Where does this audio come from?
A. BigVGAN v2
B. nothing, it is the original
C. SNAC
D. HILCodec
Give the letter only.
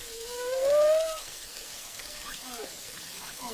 C